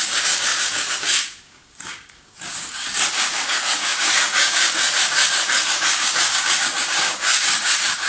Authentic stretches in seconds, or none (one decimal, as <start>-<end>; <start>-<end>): none